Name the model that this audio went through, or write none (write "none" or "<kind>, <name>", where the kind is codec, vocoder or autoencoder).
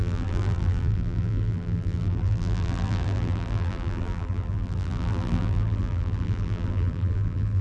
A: vocoder, BigVGAN v2